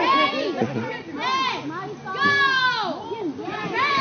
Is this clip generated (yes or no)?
no